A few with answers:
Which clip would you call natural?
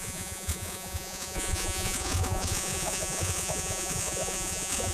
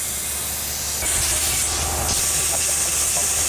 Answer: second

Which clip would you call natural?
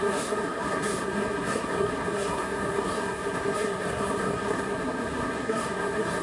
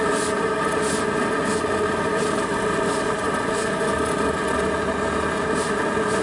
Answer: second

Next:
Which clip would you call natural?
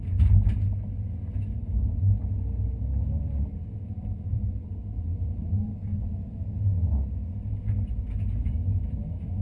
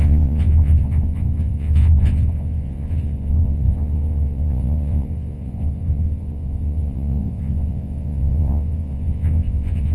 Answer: first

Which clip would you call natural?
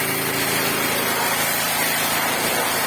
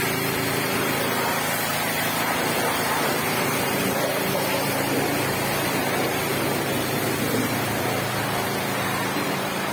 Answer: first